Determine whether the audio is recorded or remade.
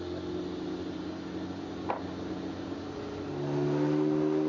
recorded